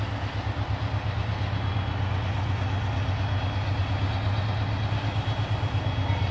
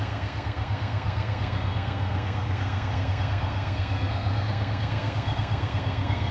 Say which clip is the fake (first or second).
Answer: second